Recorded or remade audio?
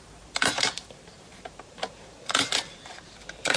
remade